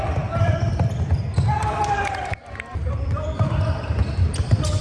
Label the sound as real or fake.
fake